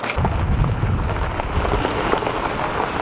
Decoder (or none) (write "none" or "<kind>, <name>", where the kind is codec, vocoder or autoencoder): none